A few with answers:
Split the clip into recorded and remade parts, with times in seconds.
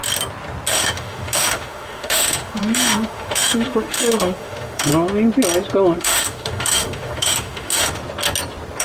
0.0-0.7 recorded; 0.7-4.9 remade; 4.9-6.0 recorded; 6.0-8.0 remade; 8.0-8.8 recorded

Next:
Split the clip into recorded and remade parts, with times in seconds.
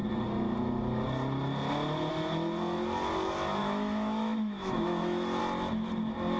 0.0-3.6 recorded; 3.6-5.4 remade; 5.4-6.4 recorded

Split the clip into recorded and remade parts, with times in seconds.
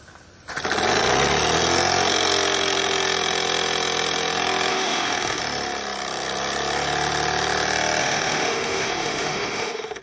0.0-4.7 recorded; 4.7-5.4 remade; 5.4-8.0 recorded; 8.0-10.0 remade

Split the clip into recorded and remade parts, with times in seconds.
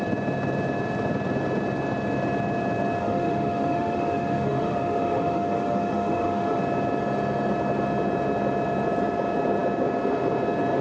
0.0-3.0 recorded; 3.0-6.6 remade; 6.6-10.8 recorded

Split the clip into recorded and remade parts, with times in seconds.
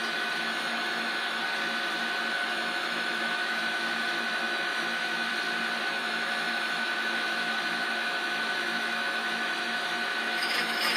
0.0-1.4 remade; 1.4-2.3 recorded; 2.3-5.3 remade; 5.3-5.8 recorded; 5.8-11.0 remade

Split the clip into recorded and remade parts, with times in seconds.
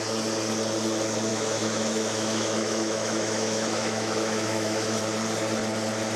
0.0-1.3 recorded; 1.3-5.0 remade; 5.0-6.2 recorded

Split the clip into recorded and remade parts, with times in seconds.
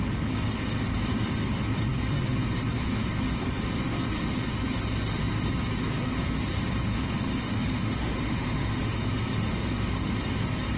0.0-6.9 recorded; 6.9-9.1 remade; 9.1-9.5 recorded; 9.5-10.1 remade; 10.1-10.8 recorded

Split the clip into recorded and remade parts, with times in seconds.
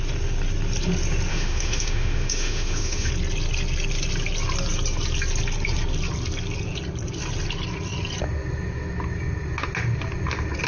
0.0-1.3 recorded; 1.3-3.1 remade; 3.1-10.7 recorded